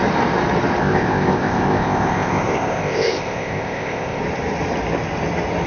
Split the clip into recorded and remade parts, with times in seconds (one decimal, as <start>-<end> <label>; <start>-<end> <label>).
0.0-0.8 recorded; 0.8-4.2 remade; 4.2-5.7 recorded